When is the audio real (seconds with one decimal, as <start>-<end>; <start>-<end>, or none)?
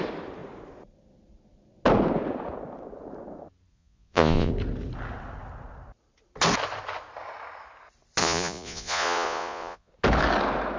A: 0.0-3.7; 4.5-8.2; 9.9-10.8